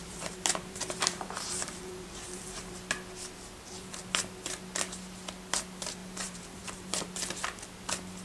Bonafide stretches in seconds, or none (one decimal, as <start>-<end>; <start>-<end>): 2.8-6.0; 7.1-8.2